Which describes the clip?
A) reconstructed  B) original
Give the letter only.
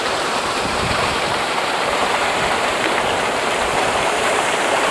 A